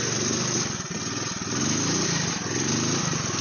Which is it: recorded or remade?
recorded